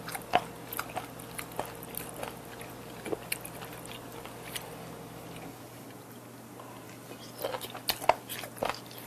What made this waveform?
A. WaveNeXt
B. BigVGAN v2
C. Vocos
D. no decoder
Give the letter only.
D